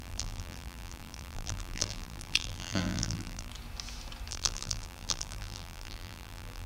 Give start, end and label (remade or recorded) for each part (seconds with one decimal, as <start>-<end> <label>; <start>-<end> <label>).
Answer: 0.0-3.5 remade; 3.5-4.3 recorded; 4.3-6.7 remade